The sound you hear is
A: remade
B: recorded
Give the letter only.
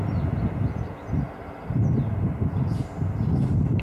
B